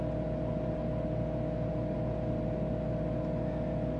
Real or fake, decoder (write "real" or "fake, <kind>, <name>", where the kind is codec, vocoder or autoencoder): real